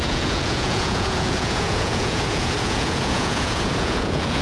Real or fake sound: fake